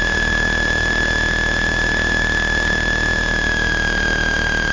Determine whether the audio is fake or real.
real